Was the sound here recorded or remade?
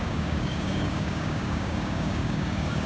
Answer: remade